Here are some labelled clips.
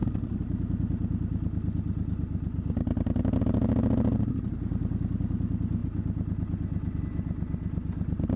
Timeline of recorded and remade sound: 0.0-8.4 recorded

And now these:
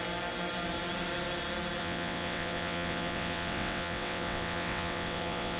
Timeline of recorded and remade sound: 0.0-1.8 recorded; 1.8-5.6 remade

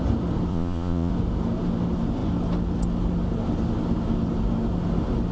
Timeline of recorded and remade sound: 0.0-0.5 recorded; 0.5-1.1 remade; 1.1-5.3 recorded